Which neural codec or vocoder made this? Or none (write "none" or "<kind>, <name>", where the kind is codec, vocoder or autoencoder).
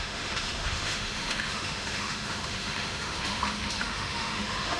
autoencoder, DAC-VAE